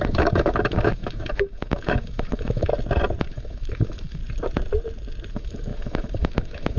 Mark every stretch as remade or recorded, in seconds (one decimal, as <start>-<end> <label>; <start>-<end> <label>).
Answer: 0.0-2.7 remade; 2.7-3.2 recorded; 3.2-4.2 remade; 4.2-5.3 recorded; 5.3-6.8 remade